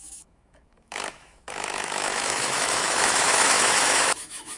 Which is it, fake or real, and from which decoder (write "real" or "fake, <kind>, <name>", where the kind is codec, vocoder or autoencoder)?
fake, autoencoder, DAC-VAE